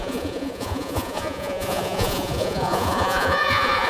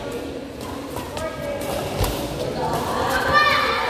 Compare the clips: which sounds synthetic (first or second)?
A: first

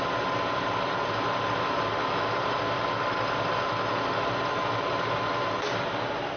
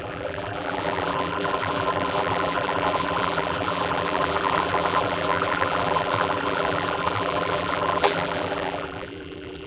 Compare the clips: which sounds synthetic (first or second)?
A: second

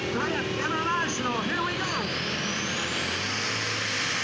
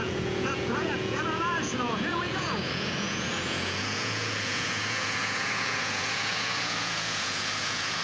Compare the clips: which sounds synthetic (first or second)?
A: second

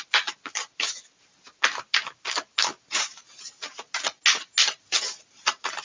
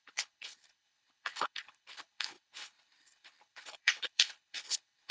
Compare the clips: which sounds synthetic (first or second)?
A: second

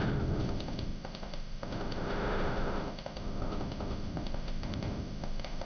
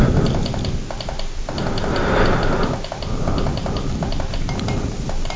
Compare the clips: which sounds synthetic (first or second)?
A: first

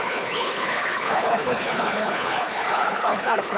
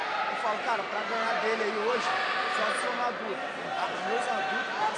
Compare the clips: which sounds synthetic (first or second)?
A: first